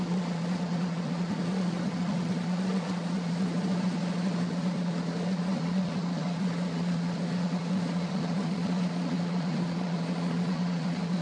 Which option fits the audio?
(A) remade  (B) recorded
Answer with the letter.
A